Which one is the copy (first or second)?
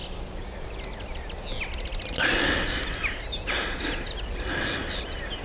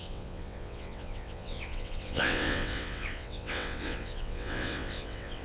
second